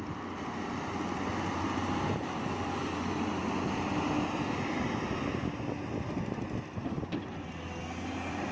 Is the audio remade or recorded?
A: recorded